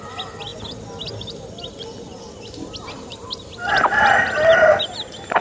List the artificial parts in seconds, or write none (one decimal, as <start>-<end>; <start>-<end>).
none